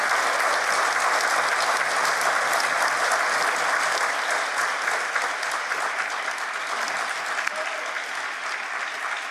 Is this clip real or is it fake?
real